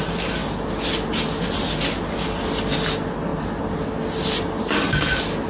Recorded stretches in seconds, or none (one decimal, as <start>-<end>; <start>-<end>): 0.0-5.5